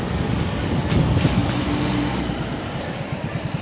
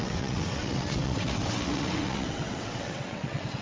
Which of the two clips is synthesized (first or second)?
second